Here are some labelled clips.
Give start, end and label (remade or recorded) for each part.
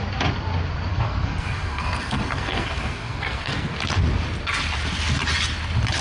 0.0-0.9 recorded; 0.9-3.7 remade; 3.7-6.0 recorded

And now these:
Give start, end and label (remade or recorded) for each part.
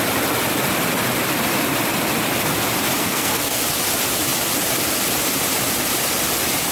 0.0-3.0 recorded; 3.0-3.6 remade; 3.6-6.7 recorded